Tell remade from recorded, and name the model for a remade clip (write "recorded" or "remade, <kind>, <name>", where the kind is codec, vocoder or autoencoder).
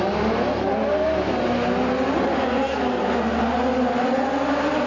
recorded